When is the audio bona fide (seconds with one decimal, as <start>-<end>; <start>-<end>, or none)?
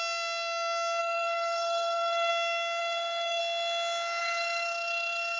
0.0-1.0; 2.3-2.8; 3.4-4.2